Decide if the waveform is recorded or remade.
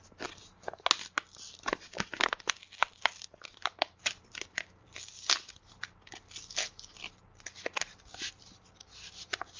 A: recorded